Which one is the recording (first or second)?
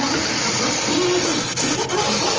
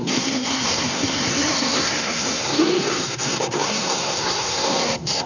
first